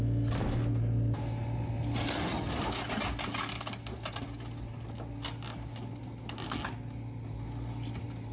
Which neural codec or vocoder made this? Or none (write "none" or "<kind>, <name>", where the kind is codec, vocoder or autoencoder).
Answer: none